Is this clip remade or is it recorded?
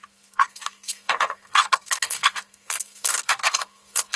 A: remade